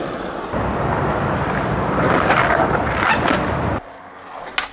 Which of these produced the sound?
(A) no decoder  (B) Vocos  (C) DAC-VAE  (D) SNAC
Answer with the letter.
A